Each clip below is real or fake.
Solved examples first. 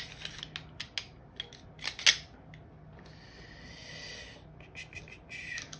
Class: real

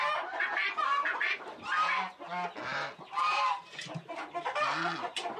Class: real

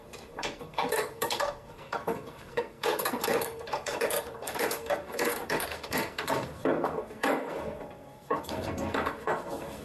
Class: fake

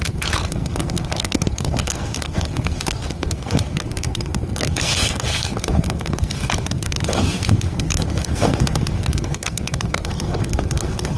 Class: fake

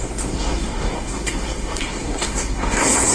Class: fake